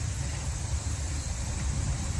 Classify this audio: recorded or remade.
recorded